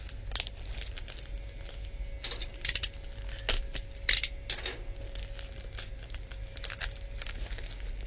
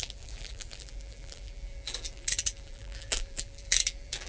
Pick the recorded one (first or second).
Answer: first